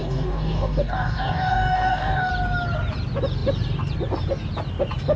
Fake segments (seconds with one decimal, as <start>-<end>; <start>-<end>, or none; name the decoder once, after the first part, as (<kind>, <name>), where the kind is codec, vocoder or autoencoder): 0.0-2.3 (codec, DAC)

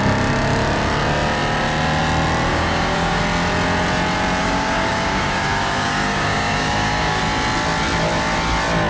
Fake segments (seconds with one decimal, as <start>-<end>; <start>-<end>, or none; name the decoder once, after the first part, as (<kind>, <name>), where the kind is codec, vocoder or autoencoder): 2.5-3.2 (codec, DAC); 4.4-7.2

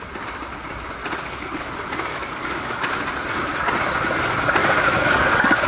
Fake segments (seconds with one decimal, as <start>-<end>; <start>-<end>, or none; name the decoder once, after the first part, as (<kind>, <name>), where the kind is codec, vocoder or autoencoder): 1.0-1.7 (codec, DAC); 2.1-2.9; 4.6-5.7

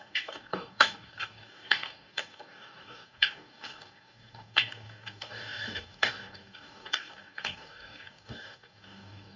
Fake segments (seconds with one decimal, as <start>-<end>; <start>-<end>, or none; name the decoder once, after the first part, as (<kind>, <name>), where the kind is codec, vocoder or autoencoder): 0.0-9.4 (codec, DAC)

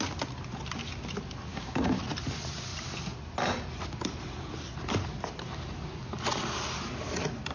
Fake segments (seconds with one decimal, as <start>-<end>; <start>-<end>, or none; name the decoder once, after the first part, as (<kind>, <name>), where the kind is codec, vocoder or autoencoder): 1.5-2.0 (codec, DAC)

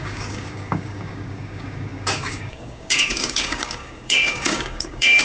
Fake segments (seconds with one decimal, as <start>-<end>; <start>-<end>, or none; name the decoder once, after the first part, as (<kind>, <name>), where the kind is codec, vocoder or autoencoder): 0.0-5.2 (codec, DAC)

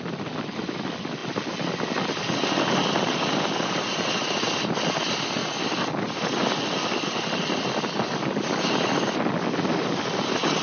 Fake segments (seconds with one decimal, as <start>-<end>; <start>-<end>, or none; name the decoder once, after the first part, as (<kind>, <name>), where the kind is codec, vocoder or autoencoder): none

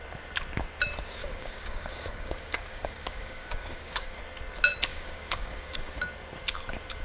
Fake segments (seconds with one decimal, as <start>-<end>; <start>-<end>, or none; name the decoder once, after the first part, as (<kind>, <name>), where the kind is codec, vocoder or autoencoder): 1.2-4.2 (codec, DAC); 4.9-6.0